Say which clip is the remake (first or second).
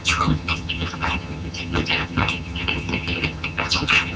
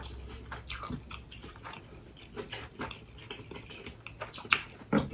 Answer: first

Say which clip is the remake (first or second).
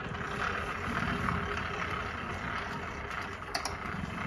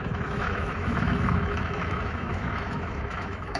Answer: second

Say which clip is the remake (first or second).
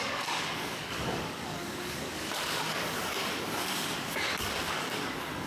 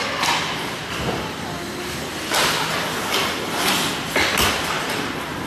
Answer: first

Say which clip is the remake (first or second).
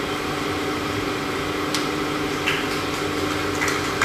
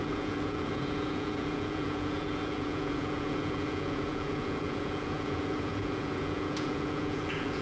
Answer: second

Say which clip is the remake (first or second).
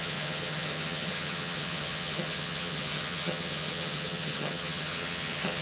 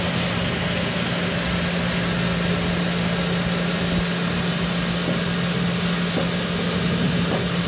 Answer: first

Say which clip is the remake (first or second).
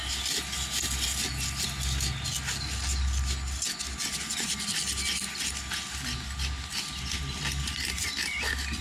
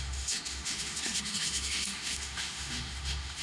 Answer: second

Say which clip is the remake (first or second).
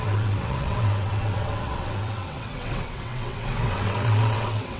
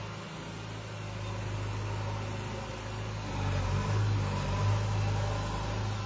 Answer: first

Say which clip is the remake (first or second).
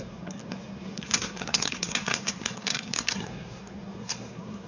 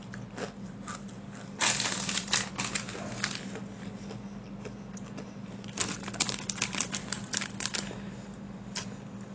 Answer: first